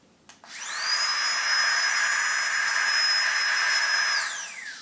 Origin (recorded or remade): recorded